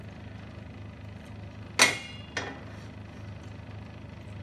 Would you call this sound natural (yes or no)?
yes